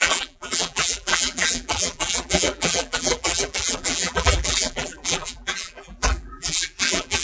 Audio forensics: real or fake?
fake